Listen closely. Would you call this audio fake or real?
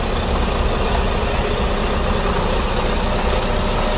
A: real